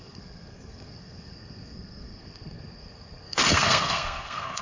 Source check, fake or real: fake